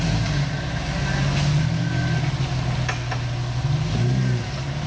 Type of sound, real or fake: real